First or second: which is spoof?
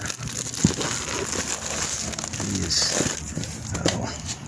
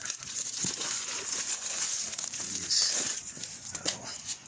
second